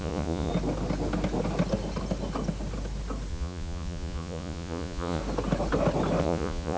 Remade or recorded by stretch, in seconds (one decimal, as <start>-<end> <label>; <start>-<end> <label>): 0.0-0.5 remade; 0.5-3.3 recorded; 3.3-5.2 remade; 5.2-6.2 recorded; 6.2-6.8 remade